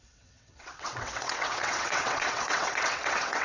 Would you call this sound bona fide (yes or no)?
no